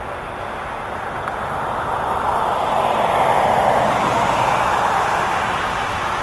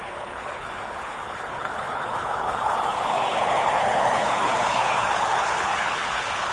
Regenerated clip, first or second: second